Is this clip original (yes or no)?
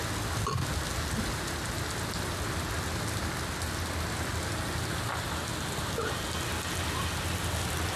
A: yes